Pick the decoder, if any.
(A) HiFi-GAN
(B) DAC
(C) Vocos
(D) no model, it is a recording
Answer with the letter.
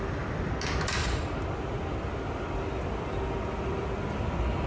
D